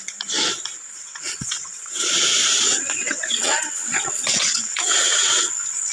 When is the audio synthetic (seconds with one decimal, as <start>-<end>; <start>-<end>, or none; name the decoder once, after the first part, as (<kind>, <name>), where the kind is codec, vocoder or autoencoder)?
0.9-2.1 (vocoder, WaveNeXt); 2.7-5.5